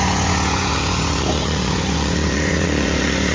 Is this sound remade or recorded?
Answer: remade